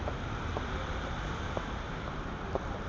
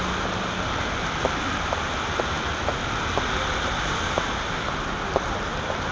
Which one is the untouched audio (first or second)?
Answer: second